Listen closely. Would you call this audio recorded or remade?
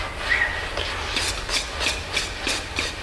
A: recorded